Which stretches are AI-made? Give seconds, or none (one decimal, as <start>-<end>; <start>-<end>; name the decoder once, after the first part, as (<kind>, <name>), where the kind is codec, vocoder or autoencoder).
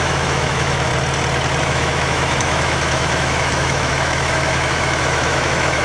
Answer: 0.0-0.9 (autoencoder, DAC-VAE); 1.6-5.8